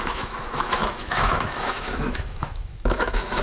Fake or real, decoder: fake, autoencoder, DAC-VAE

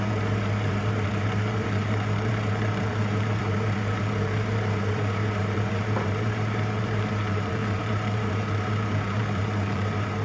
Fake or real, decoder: fake, vocoder, BigVGAN v2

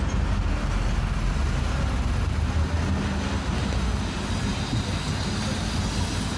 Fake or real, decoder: real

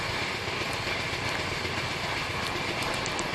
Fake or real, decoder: real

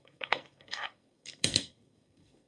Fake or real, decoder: fake, codec, SNAC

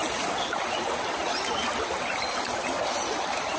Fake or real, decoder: real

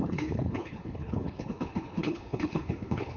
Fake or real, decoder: fake, codec, HILCodec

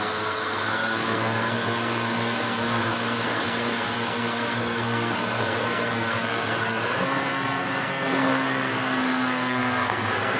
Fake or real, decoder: fake, codec, SNAC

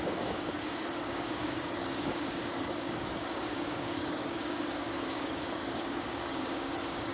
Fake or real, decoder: fake, codec, DAC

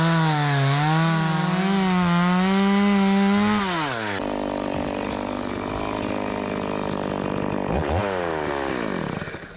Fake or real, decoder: real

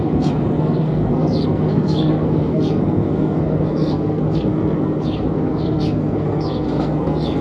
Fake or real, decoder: fake, codec, SNAC